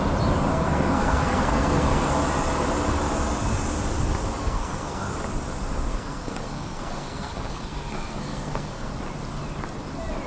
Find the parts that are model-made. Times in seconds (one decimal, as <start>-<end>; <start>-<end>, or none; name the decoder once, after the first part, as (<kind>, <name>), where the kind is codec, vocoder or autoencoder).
0.5-2.1 (codec, SNAC); 4.4-5.1; 5.9-8.9